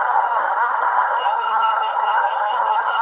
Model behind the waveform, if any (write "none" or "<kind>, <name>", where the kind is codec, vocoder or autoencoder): codec, SNAC